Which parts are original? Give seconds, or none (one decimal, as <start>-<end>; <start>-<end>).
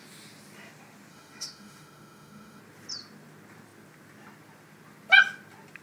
0.0-1.1; 2.6-5.8